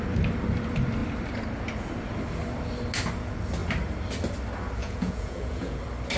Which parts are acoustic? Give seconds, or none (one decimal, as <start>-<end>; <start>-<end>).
0.0-4.8; 5.8-6.2